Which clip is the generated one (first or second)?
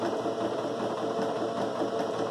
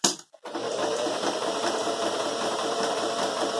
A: second